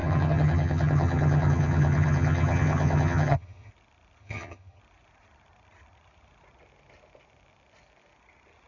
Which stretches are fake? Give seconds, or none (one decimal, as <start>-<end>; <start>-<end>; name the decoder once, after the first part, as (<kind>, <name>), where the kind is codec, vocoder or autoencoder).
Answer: 0.0-3.7 (vocoder, HiFi-GAN); 4.2-4.8